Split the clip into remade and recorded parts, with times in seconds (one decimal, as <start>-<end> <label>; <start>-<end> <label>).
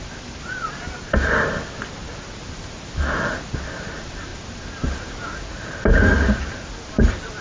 0.0-7.4 recorded